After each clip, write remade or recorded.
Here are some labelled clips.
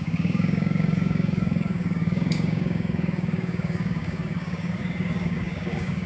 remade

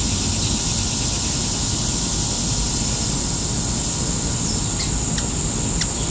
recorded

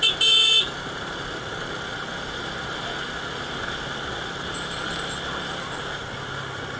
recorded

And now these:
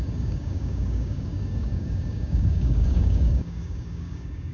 remade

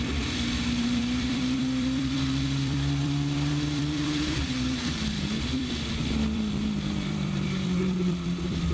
remade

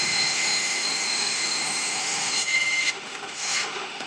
remade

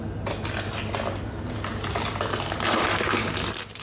recorded